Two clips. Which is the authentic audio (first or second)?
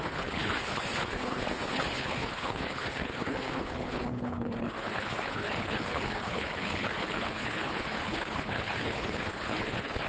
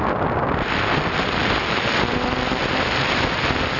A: second